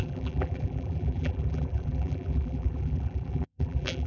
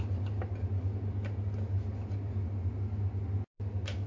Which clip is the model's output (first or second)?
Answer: first